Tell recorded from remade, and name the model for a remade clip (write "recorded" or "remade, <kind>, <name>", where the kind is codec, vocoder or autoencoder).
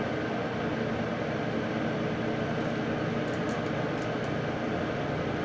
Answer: recorded